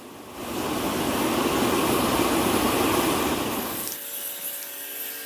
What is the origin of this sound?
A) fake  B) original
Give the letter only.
B